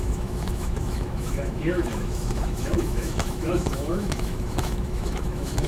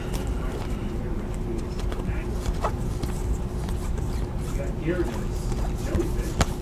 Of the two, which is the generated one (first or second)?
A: first